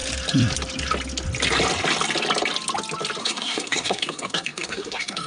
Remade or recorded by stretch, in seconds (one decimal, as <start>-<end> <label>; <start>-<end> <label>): 0.0-3.2 recorded; 3.2-5.3 remade